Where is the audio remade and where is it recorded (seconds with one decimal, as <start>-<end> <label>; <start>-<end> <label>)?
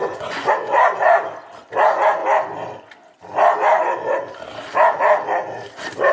0.0-0.5 remade; 0.5-6.1 recorded